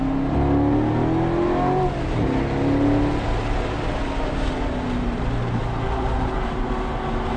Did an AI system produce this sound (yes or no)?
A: no